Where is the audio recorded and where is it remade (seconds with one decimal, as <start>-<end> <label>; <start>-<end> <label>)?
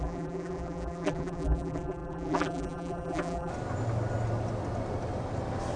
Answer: 0.0-3.5 remade; 3.5-5.8 recorded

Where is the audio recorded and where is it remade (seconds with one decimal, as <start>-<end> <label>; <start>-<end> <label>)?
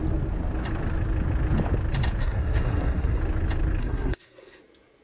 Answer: 0.0-2.2 recorded; 2.2-3.2 remade; 3.2-3.8 recorded; 3.8-4.6 remade; 4.6-5.0 recorded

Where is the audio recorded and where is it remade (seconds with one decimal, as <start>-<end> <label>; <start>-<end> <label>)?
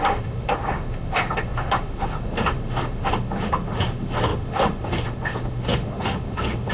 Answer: 0.0-6.7 remade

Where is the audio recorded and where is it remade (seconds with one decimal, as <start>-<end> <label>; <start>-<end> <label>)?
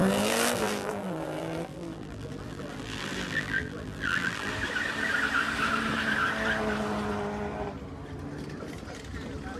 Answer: 0.0-4.5 remade; 4.5-9.6 recorded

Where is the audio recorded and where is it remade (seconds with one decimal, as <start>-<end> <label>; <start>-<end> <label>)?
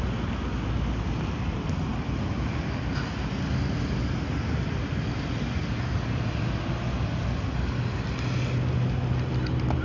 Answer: 0.0-9.8 recorded